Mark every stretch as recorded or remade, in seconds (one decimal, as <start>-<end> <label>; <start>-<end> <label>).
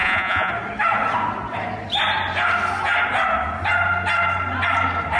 0.0-0.5 remade; 0.5-5.2 recorded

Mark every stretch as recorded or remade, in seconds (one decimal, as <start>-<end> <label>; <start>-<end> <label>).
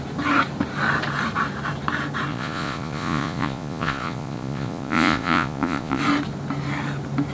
0.0-2.3 recorded; 2.3-6.0 remade; 6.0-7.3 recorded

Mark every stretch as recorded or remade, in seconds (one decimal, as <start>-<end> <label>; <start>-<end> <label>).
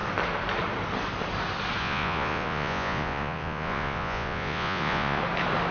0.0-1.8 recorded; 1.8-5.2 remade; 5.2-5.7 recorded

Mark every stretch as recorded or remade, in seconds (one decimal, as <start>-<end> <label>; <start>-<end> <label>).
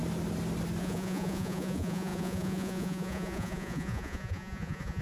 0.0-0.8 recorded; 0.8-5.0 remade